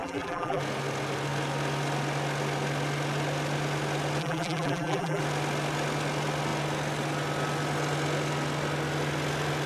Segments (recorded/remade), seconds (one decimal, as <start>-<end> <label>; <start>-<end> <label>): 0.0-0.6 remade; 0.6-4.2 recorded; 4.2-5.2 remade; 5.2-9.7 recorded